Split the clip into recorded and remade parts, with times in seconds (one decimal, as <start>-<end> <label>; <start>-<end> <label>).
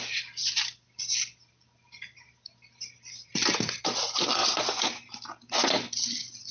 0.0-6.5 recorded